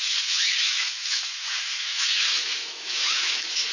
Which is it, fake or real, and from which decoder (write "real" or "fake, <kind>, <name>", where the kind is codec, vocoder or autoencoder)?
fake, autoencoder, DAC-VAE